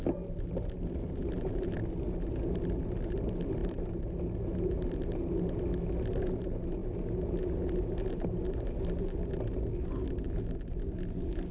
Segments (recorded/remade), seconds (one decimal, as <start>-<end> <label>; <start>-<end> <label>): 0.0-11.5 recorded